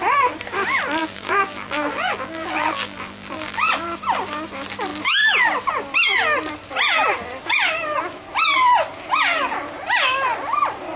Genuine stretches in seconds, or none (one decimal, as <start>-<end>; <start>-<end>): 0.0-1.0; 3.7-11.0